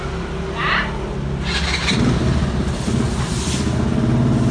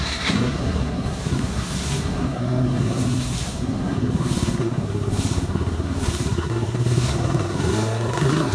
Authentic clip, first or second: first